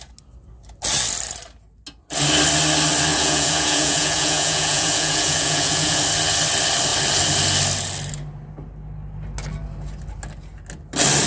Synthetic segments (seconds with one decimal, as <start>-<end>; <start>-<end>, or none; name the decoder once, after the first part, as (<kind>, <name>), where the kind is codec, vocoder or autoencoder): 3.1-6.0 (vocoder, Vocos)